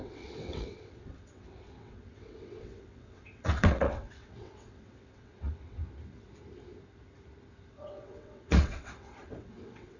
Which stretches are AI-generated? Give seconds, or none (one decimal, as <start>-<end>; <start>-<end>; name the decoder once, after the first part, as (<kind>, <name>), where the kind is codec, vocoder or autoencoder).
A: 0.0-5.8 (vocoder, WaveNeXt); 7.7-10.0